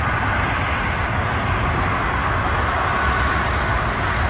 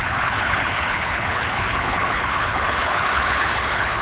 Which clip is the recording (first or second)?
first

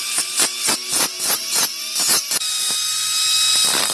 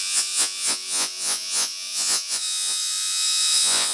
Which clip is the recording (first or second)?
first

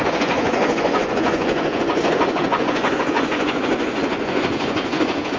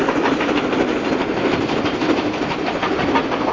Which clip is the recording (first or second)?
second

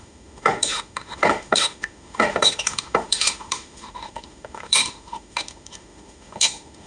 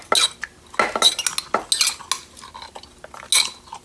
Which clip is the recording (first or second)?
second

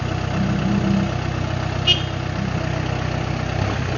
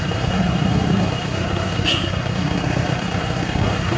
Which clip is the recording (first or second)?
first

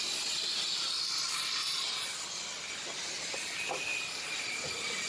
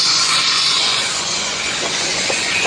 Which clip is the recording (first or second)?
first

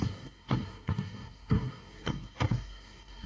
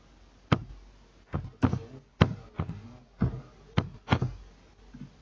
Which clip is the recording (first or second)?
second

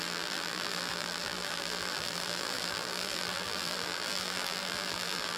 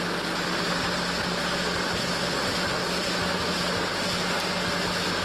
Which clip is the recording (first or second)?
second